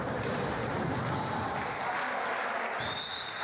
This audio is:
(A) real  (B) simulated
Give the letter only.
A